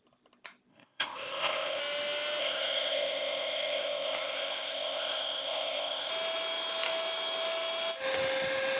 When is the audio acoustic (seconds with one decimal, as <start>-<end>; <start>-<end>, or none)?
0.0-0.7; 1.8-2.4; 6.1-8.8